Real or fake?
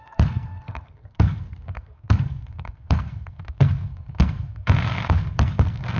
fake